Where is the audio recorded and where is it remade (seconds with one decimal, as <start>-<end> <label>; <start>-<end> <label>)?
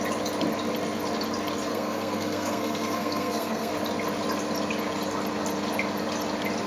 0.0-1.7 recorded; 1.7-3.7 remade; 3.7-6.7 recorded